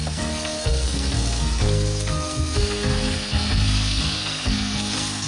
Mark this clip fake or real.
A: fake